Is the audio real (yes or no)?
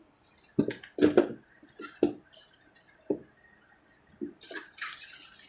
yes